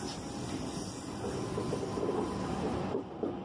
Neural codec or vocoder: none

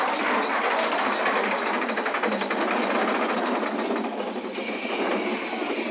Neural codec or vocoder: none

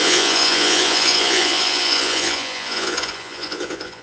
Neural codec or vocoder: vocoder, Vocos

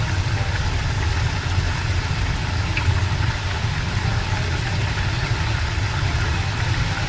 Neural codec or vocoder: none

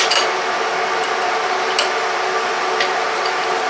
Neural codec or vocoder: none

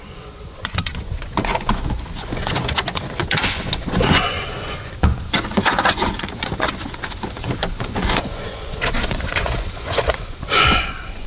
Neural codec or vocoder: vocoder, Vocos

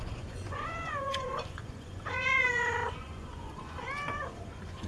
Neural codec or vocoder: vocoder, Vocos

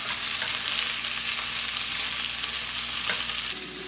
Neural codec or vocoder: none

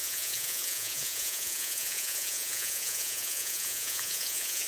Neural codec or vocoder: vocoder, Vocos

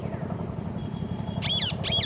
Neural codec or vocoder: none